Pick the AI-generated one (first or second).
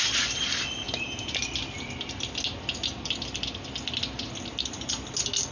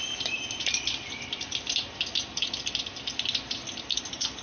second